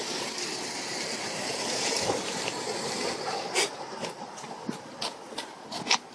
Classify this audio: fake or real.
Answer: real